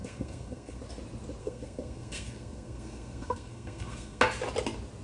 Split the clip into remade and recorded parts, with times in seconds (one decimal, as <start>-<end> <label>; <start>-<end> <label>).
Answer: 0.0-0.8 remade; 0.8-1.4 recorded; 1.4-4.2 remade; 4.2-5.0 recorded